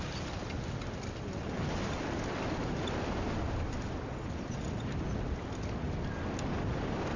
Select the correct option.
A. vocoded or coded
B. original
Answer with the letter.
B